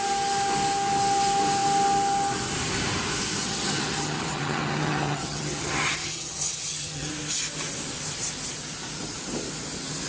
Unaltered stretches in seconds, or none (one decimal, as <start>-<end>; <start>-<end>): 0.0-3.4; 7.1-10.1